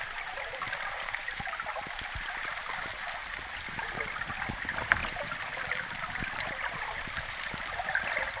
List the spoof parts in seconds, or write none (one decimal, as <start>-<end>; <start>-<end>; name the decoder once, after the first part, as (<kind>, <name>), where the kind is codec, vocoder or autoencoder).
none

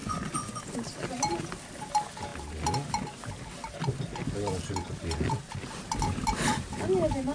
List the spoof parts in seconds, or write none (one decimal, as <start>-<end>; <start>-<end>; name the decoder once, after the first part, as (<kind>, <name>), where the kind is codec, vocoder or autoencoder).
0.0-0.6 (vocoder, Vocos)

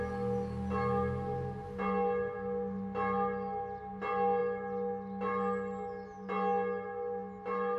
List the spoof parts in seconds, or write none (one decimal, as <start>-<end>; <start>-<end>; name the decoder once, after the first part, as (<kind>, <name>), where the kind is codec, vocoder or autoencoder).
none

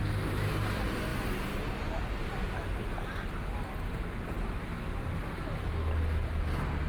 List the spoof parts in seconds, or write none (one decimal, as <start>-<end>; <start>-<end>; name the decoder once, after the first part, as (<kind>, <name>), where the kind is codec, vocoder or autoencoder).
none

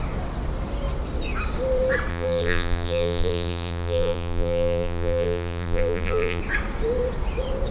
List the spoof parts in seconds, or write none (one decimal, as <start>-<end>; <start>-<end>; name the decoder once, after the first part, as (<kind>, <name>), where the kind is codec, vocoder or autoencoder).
2.1-6.4 (vocoder, BigVGAN v2)

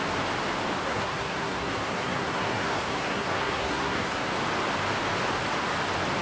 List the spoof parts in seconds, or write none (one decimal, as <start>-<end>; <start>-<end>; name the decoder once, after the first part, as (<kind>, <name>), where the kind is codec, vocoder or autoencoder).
0.8-4.3 (codec, SNAC)

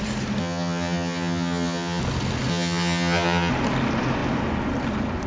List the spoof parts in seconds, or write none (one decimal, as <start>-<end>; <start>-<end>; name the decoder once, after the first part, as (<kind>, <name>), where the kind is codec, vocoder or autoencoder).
0.4-2.0 (vocoder, HiFi-GAN); 2.5-3.5